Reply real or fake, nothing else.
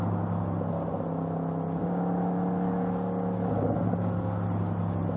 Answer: real